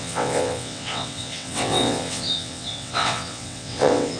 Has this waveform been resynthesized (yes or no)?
yes